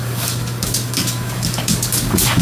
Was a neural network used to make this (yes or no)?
yes